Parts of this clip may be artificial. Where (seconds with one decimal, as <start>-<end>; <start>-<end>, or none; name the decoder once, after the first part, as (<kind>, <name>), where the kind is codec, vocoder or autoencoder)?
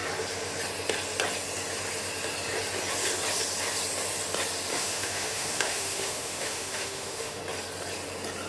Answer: 4.7-7.4 (autoencoder, DAC-VAE)